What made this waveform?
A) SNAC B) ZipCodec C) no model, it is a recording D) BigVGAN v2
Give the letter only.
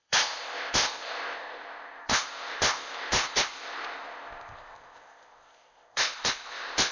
B